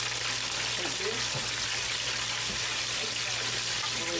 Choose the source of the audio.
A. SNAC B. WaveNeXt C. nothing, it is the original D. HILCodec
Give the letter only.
C